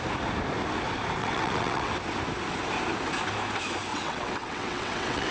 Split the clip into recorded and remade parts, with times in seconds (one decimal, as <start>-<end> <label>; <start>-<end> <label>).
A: 0.0-1.2 recorded; 1.2-1.9 remade; 1.9-3.9 recorded; 3.9-5.3 remade